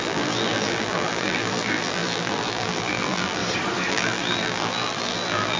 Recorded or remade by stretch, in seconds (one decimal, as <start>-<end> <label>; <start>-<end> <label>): 0.0-3.4 remade; 3.4-3.9 recorded; 3.9-5.6 remade